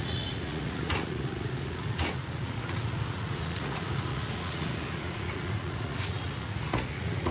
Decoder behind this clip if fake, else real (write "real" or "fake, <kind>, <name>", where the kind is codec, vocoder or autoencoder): fake, vocoder, Vocos